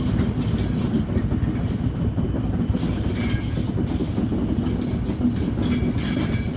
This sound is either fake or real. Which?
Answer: real